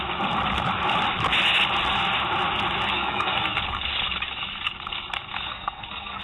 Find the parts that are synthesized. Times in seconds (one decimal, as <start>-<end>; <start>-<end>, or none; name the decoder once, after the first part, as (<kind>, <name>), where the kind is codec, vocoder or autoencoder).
2.9-3.6 (codec, SNAC); 5.5-6.2